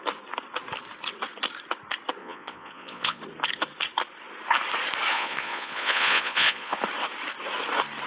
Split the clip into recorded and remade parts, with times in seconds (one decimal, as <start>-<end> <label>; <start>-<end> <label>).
0.0-2.2 recorded; 2.2-3.2 remade; 3.2-5.1 recorded; 5.1-6.8 remade; 6.8-8.1 recorded